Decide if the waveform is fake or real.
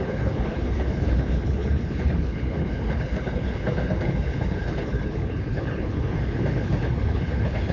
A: fake